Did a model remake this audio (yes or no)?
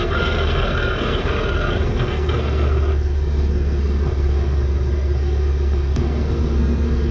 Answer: yes